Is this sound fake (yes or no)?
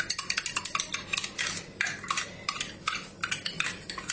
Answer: no